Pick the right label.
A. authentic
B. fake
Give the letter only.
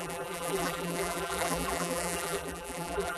B